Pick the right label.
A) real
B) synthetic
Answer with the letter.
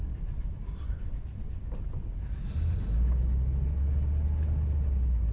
A